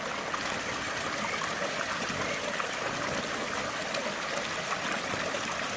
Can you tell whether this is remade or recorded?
recorded